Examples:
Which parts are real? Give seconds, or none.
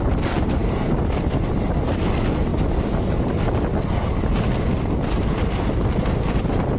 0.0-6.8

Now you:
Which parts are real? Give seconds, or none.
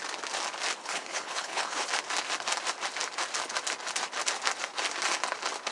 0.0-0.8; 1.9-5.7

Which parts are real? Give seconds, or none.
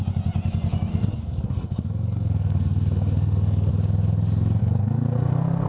0.0-0.9; 3.7-4.6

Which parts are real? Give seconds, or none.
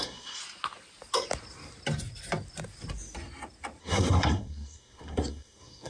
0.4-3.8